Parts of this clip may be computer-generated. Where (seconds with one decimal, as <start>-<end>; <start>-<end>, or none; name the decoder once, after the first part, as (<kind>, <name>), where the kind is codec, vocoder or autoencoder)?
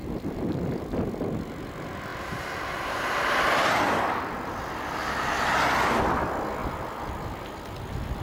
0.0-0.7 (vocoder, BigVGAN v2)